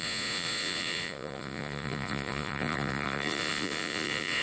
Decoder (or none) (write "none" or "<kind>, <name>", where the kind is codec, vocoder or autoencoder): vocoder, Vocos